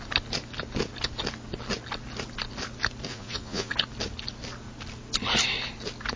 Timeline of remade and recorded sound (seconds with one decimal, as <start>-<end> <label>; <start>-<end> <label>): 0.0-3.1 recorded; 3.1-3.7 remade; 3.7-6.2 recorded